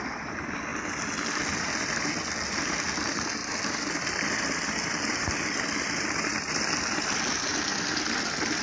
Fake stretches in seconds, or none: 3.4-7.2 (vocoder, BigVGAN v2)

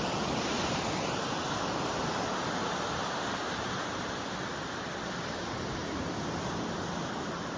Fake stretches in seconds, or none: 5.8-6.5 (vocoder, BigVGAN v2)

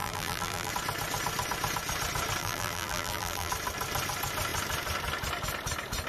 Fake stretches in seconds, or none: 0.0-0.7 (vocoder, BigVGAN v2); 2.4-3.5